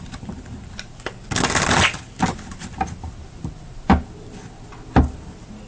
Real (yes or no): yes